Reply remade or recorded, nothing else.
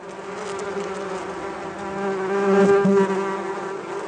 recorded